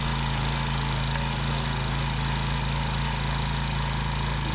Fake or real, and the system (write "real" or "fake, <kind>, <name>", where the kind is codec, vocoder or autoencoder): real